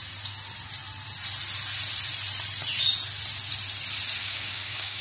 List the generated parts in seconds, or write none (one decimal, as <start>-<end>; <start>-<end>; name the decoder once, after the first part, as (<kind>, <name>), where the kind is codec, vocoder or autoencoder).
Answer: 4.2-5.0 (codec, DAC)